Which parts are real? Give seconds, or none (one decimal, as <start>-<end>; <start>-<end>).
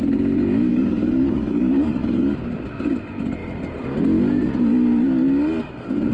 0.0-0.7; 2.3-6.1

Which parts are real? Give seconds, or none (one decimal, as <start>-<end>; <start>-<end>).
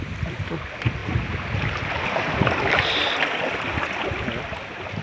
0.0-5.0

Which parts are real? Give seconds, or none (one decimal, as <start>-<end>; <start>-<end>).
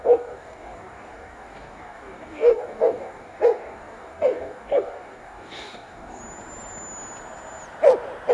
6.2-8.3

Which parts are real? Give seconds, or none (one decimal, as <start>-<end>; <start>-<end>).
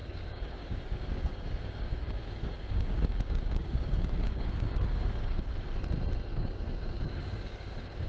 5.5-6.3